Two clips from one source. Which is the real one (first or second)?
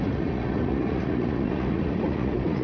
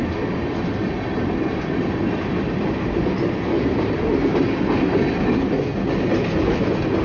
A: second